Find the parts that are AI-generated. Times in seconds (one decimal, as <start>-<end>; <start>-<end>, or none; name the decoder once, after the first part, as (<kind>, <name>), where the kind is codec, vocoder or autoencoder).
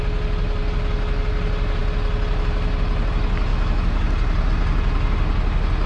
none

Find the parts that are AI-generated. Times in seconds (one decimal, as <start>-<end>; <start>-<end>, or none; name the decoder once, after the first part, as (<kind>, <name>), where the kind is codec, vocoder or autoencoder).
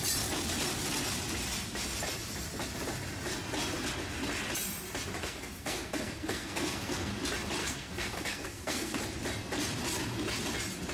5.2-7.1 (codec, SNAC); 7.6-9.0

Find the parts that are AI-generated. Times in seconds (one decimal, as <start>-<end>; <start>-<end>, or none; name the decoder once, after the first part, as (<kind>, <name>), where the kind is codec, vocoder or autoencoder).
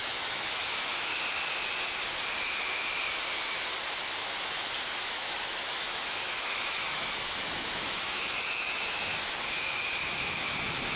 0.0-1.1 (autoencoder, DAC-VAE); 5.0-9.1; 9.7-11.0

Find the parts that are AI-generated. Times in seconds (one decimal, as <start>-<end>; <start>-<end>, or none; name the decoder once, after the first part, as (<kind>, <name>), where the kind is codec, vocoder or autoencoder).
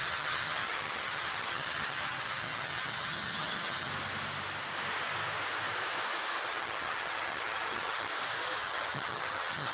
0.0-3.9 (vocoder, HiFi-GAN); 6.5-8.1; 8.6-9.7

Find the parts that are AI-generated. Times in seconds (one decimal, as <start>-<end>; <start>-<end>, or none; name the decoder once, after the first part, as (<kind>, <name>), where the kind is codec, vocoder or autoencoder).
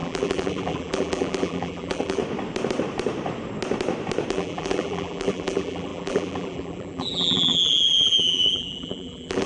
0.0-2.2 (vocoder, BigVGAN v2); 4.3-9.5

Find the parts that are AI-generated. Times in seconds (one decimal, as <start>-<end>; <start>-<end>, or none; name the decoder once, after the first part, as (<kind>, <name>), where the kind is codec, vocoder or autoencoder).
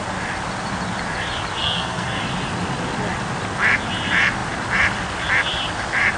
1.6-2.2 (codec, SNAC)